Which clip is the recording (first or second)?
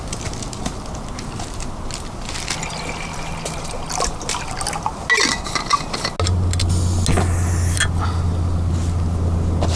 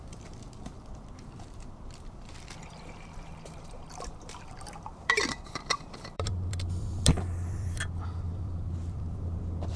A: first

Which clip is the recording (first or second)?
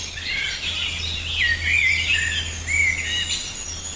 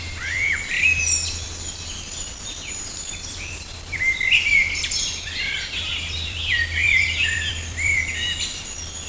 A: first